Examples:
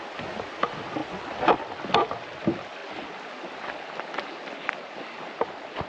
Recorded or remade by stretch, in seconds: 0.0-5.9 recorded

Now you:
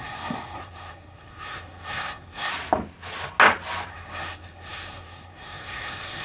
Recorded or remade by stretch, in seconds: 0.0-2.5 remade; 2.5-3.9 recorded; 3.9-6.2 remade

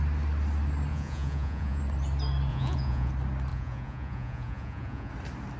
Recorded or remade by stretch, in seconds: 0.0-0.9 recorded; 0.9-1.8 remade; 1.8-2.5 recorded; 2.5-3.1 remade; 3.1-3.5 recorded; 3.5-5.1 remade; 5.1-5.6 recorded